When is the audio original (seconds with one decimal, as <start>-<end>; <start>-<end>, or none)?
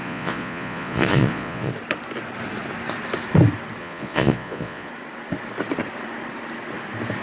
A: 1.7-3.8; 4.9-7.2